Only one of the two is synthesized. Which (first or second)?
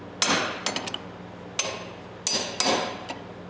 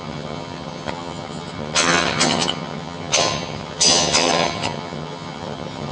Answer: second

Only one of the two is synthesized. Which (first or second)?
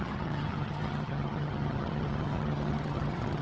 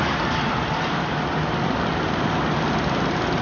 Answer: first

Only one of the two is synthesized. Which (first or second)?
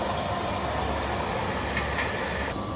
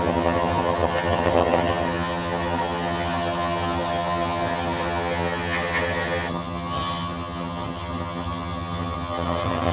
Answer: second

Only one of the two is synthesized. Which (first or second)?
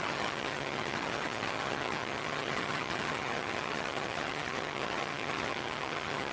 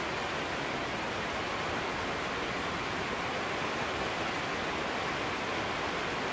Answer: first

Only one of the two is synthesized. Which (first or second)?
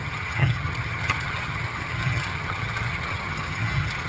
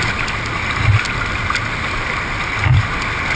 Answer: first